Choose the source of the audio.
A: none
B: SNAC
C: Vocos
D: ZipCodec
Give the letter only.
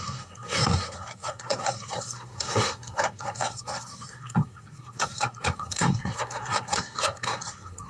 B